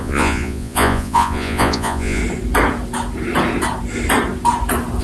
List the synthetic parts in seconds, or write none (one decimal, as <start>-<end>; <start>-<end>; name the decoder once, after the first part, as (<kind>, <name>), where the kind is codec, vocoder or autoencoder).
0.0-2.2 (vocoder, Vocos)